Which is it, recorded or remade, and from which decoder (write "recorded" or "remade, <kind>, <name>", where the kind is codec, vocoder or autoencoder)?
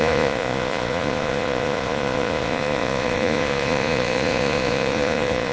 remade, vocoder, Vocos